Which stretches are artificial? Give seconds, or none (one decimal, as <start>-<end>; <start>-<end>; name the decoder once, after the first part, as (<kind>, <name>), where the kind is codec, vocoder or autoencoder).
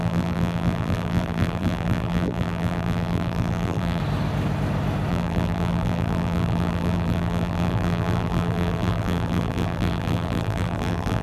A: 0.0-4.0 (vocoder, BigVGAN v2); 5.1-11.2